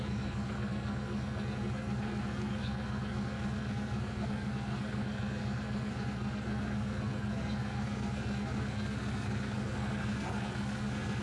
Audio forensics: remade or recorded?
remade